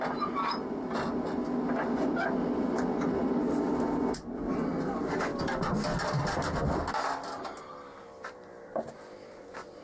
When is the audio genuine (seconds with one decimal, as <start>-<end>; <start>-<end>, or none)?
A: 0.0-9.8